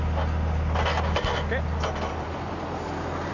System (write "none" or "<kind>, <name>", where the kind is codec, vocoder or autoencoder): none